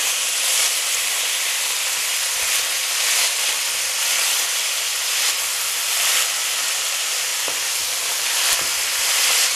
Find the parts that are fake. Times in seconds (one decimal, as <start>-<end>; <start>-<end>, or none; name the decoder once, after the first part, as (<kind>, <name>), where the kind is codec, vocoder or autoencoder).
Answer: 7.3-7.8 (vocoder, BigVGAN v2)

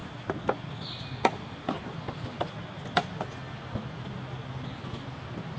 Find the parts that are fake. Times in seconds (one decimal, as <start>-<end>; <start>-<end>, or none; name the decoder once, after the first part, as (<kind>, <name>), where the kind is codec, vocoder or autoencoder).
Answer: 0.0-0.7 (vocoder, BigVGAN v2)

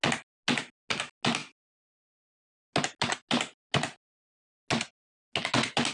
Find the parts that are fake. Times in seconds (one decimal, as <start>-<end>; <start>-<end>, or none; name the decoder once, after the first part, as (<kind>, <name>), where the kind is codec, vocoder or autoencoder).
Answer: none

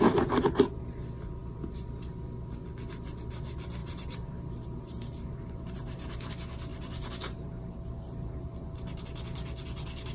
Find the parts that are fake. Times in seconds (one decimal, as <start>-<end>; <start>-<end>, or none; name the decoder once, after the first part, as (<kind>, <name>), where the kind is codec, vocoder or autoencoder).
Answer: 3.8-6.3 (vocoder, BigVGAN v2); 6.7-9.0

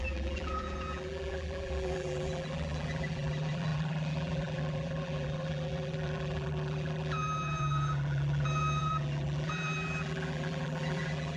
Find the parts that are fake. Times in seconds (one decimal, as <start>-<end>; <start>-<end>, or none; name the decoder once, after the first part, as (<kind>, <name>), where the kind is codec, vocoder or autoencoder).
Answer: 0.0-11.4 (vocoder, BigVGAN v2)

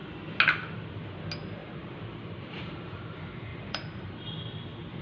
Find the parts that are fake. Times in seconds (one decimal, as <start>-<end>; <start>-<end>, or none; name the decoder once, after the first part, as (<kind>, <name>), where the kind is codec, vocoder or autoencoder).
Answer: 1.6-3.0 (vocoder, BigVGAN v2); 3.5-4.3

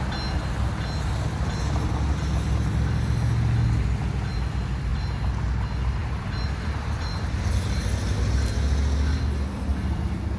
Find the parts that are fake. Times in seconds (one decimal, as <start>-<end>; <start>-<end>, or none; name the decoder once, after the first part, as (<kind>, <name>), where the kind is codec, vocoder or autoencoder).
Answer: 4.9-5.4 (vocoder, BigVGAN v2); 6.0-7.8; 9.7-10.4